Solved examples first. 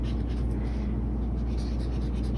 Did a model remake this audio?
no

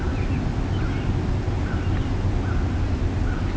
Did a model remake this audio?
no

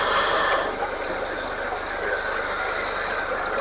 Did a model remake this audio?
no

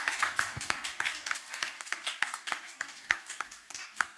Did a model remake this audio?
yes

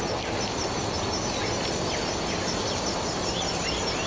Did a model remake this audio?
no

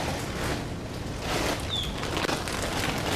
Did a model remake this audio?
no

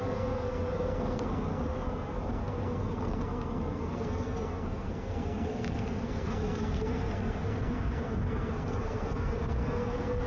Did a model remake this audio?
yes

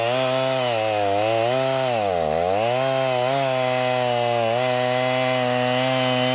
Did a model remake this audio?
no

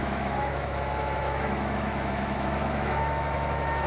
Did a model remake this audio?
yes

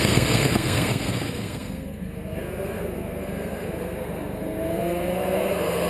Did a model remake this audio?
yes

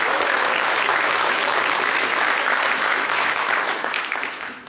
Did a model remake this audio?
yes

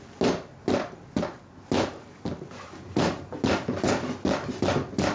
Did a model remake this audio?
no